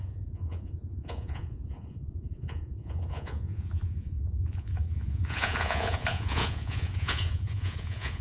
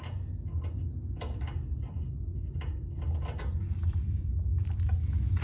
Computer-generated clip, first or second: first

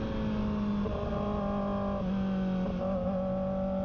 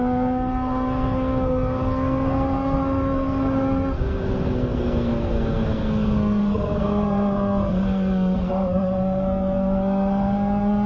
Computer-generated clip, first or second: second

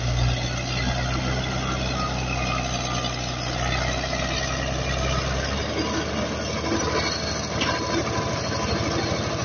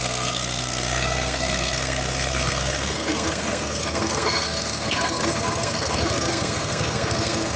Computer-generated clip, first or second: second